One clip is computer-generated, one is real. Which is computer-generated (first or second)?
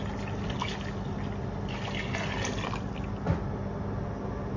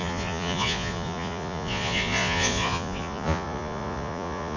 second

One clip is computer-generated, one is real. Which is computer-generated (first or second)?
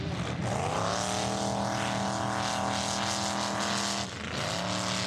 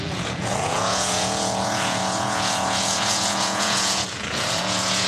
second